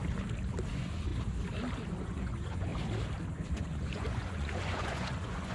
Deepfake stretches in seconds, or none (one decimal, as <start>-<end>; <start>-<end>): 0.7-1.1; 2.0-2.7; 3.5-5.5

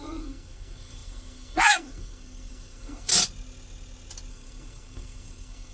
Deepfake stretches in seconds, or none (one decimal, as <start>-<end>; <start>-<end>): 0.0-3.1; 4.3-5.7

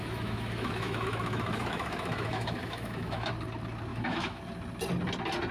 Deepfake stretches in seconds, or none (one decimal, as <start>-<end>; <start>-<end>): 0.0-3.3; 3.9-4.4

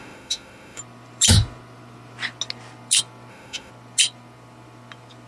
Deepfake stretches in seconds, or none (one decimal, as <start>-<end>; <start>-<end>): 0.0-0.8; 3.3-3.7

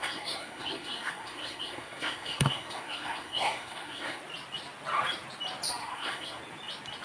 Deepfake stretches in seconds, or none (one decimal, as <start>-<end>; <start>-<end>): 0.0-4.2; 5.8-6.4